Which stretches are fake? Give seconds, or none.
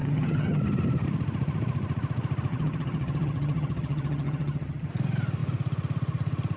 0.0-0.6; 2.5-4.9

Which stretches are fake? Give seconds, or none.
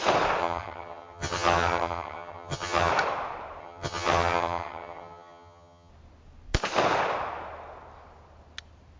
0.4-2.9; 3.6-5.9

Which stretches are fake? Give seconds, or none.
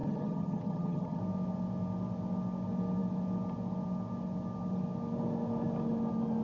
0.0-1.2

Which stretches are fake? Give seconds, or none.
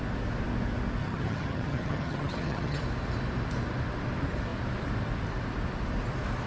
1.0-2.8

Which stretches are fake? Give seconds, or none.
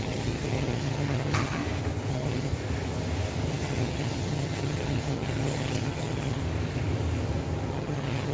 0.0-1.6; 2.1-2.5; 3.5-6.4; 7.7-8.3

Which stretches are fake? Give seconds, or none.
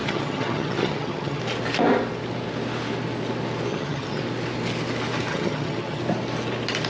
0.0-1.4; 3.7-4.2; 5.3-6.0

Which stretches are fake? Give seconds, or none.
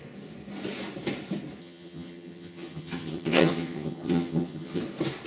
1.6-4.8